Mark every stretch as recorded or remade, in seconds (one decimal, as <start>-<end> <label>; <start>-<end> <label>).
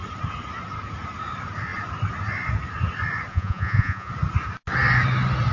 0.0-3.3 recorded; 3.3-4.1 remade; 4.1-5.5 recorded